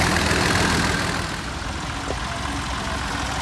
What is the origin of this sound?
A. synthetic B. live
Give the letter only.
B